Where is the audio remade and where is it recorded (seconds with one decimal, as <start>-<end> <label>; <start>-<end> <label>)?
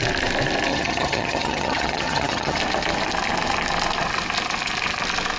0.0-0.7 recorded; 0.7-2.6 remade; 2.6-5.4 recorded